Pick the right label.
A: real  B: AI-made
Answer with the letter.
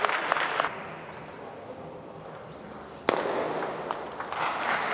A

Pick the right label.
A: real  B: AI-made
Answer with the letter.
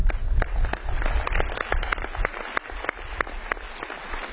A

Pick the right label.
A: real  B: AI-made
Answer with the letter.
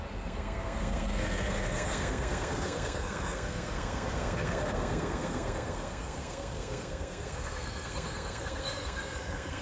B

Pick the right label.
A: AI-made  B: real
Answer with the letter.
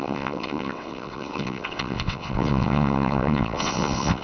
A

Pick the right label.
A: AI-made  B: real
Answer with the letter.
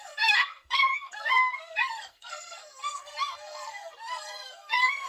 A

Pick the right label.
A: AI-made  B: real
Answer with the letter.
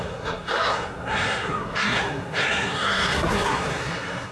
A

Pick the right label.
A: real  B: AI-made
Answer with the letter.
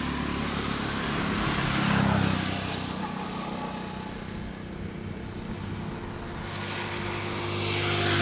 A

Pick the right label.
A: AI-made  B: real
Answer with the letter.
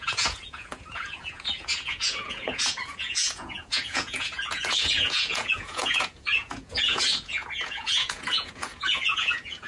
A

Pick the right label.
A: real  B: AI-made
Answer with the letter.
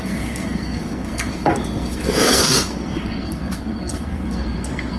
B